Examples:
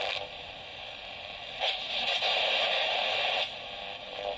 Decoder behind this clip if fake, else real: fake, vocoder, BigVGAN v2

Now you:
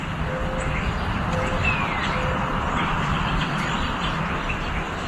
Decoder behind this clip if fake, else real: real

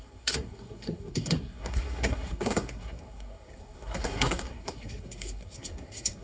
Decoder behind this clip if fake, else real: fake, codec, SNAC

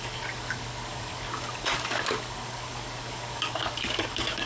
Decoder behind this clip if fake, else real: fake, codec, DAC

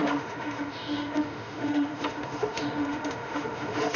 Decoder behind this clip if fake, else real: fake, autoencoder, DAC-VAE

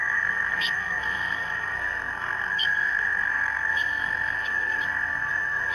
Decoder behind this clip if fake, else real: fake, codec, SNAC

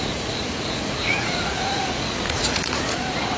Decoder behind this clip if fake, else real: fake, vocoder, Vocos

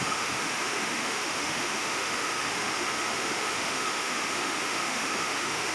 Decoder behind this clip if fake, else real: fake, autoencoder, DAC-VAE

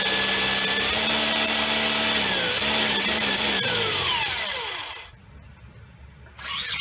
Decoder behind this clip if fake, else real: real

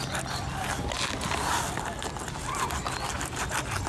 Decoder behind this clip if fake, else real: real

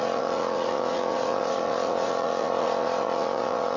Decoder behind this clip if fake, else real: fake, vocoder, Vocos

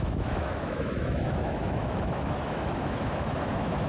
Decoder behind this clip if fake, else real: fake, autoencoder, DAC-VAE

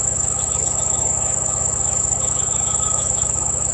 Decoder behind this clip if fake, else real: fake, autoencoder, DAC-VAE